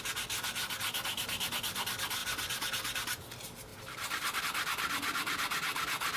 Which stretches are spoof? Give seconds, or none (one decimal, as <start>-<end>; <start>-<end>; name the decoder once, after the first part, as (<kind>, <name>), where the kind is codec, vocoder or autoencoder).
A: none